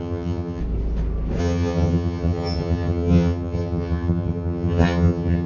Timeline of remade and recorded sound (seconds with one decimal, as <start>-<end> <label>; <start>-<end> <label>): 0.0-0.6 remade; 0.6-1.4 recorded; 1.4-5.5 remade